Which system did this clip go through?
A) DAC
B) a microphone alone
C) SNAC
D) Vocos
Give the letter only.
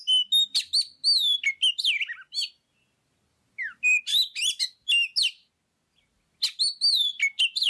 B